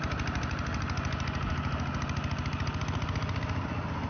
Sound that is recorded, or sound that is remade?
recorded